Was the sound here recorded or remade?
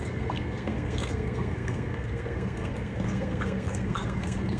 remade